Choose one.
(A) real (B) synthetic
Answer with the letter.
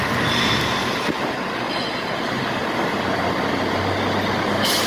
A